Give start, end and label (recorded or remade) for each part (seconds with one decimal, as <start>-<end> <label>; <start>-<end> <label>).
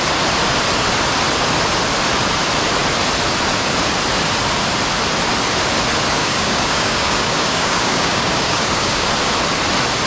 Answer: 0.0-6.2 recorded; 6.2-9.1 remade; 9.1-10.1 recorded